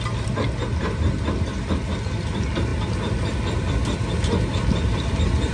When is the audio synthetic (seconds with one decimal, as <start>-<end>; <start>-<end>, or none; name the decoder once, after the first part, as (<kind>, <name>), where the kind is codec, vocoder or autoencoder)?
none